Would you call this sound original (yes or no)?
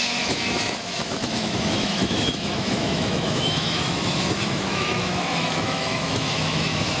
no